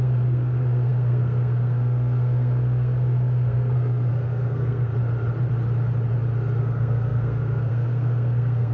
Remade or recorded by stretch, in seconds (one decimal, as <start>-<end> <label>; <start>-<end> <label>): 0.0-4.9 remade; 4.9-6.6 recorded; 6.6-8.7 remade